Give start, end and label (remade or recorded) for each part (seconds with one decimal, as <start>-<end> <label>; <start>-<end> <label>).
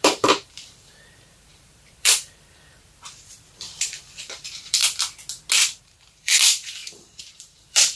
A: 0.0-4.8 remade; 4.8-5.8 recorded; 5.8-8.0 remade